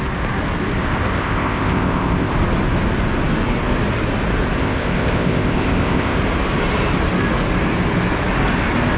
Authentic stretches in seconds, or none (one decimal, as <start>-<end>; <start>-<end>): 0.0-1.1; 2.3-4.6; 6.2-9.0